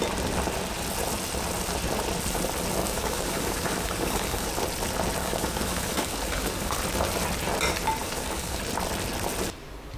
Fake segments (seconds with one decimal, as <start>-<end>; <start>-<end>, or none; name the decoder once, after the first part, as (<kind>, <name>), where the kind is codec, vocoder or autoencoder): 2.8-4.5 (codec, DAC); 5.2-6.8; 8.0-8.6